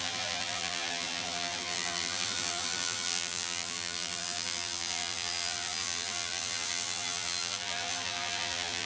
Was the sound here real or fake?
fake